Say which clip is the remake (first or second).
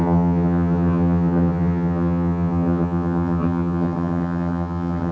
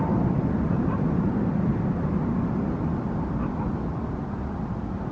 first